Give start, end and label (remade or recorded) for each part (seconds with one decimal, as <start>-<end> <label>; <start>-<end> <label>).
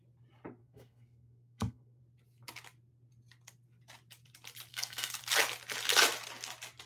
0.0-0.6 recorded; 0.6-2.0 remade; 2.0-4.7 recorded; 4.7-5.2 remade; 5.2-6.9 recorded